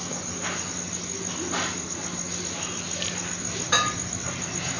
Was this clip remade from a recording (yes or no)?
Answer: no